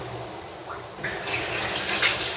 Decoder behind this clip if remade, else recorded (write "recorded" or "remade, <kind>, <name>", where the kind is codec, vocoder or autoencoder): recorded